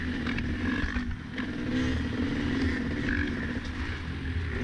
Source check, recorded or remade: recorded